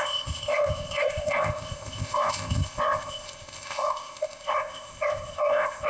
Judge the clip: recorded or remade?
remade